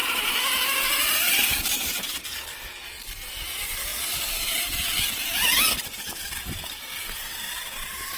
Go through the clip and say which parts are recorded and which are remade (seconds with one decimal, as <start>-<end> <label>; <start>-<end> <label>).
0.0-1.0 recorded; 1.0-2.3 remade; 2.3-8.2 recorded